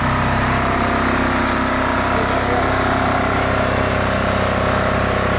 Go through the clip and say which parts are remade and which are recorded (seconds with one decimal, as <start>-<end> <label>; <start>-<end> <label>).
0.0-5.4 recorded